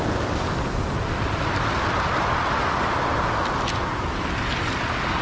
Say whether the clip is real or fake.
real